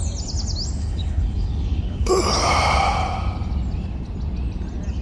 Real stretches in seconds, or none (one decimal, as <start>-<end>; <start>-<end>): 0.0-0.8; 2.1-5.0